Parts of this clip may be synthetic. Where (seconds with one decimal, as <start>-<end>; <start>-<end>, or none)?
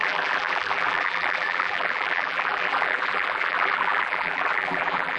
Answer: 0.0-5.2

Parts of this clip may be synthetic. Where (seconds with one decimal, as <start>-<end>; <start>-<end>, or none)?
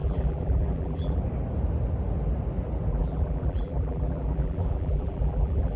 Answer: 0.0-1.2; 2.9-5.8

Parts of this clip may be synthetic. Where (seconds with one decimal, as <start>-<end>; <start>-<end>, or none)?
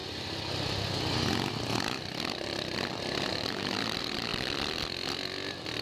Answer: 3.3-4.3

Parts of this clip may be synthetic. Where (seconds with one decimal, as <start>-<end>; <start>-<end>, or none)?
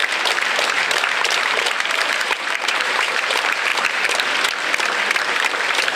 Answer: 0.6-3.7; 5.2-6.0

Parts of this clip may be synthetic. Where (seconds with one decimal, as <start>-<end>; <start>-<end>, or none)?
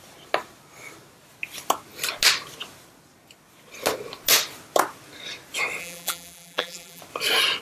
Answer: 5.8-7.0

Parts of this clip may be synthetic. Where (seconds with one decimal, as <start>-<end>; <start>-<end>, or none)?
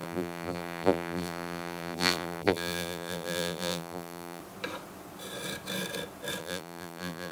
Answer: 0.0-4.4; 6.4-7.3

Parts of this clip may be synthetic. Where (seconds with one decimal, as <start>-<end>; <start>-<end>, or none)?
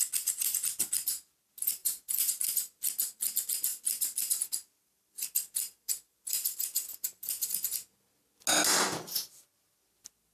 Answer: 1.8-2.8; 3.7-7.6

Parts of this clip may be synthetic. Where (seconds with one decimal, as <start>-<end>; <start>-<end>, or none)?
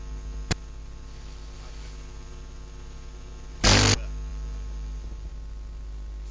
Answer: 4.3-5.3